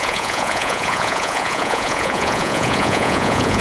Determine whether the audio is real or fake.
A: fake